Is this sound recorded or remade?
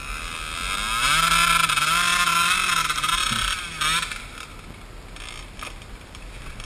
recorded